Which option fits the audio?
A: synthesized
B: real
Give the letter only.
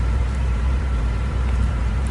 A